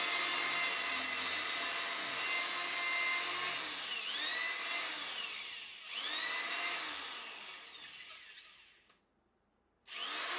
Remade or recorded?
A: recorded